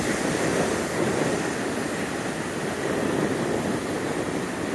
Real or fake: real